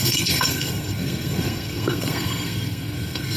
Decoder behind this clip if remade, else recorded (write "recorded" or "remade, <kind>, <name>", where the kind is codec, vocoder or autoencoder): remade, codec, SNAC